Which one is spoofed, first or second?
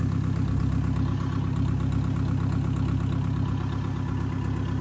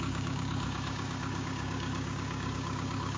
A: second